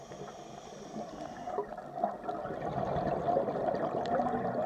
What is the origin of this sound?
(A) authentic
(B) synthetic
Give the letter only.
A